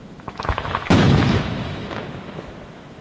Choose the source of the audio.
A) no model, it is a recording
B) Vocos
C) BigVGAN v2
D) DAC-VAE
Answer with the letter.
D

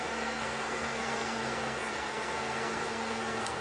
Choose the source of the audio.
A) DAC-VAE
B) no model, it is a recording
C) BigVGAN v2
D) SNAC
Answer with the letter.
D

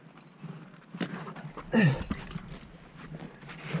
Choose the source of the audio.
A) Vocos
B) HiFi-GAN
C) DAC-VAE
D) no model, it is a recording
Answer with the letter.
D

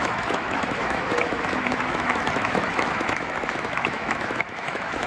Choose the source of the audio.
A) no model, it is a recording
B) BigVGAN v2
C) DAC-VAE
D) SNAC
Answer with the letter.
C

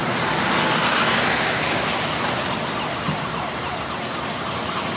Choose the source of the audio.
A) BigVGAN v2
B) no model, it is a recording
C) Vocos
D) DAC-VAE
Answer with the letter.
B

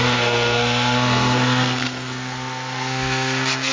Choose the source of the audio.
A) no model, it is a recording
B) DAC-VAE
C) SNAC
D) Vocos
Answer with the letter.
C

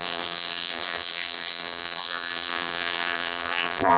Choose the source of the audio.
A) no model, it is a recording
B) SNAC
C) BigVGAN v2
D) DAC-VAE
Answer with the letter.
C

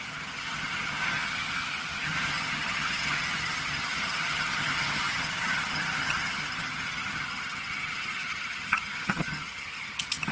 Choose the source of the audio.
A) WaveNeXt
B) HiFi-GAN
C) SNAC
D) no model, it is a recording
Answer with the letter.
B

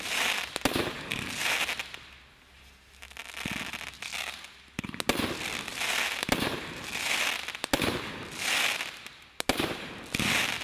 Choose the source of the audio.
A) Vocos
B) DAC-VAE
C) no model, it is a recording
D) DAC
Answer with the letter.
C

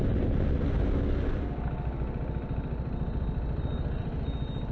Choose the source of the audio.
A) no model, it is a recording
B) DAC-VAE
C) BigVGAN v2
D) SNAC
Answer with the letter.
A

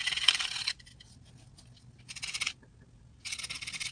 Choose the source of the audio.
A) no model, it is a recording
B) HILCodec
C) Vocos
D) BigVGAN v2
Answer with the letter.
A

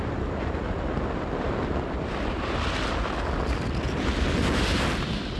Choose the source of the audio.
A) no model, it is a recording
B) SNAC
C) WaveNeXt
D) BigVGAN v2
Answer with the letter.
A